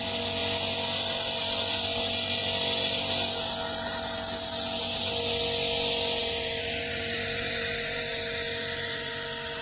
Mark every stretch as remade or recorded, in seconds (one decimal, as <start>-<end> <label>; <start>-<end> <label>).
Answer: 0.0-6.2 recorded; 6.2-9.1 remade; 9.1-9.6 recorded